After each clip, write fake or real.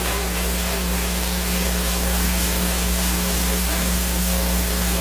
fake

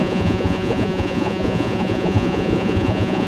fake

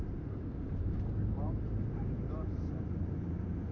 fake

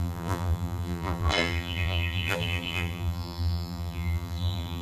fake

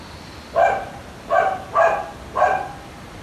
real